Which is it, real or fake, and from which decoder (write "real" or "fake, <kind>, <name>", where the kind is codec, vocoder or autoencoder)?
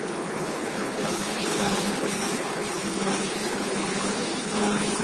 fake, codec, HILCodec